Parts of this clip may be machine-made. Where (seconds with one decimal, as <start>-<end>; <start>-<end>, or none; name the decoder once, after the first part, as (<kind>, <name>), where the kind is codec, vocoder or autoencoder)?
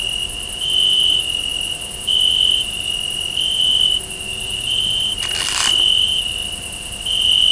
none